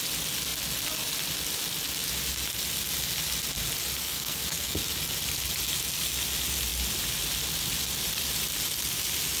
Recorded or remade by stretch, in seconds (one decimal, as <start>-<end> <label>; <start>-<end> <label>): 0.0-4.0 recorded; 4.0-4.8 remade; 4.8-9.4 recorded